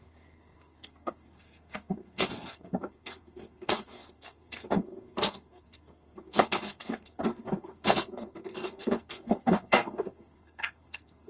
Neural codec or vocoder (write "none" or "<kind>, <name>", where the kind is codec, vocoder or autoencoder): codec, SNAC